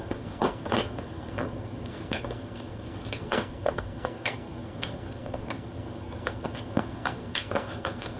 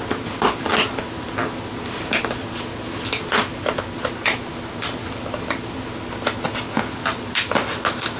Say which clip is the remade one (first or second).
first